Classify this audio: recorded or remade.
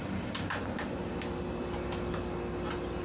recorded